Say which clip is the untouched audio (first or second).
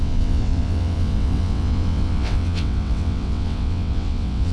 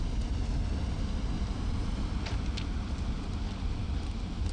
second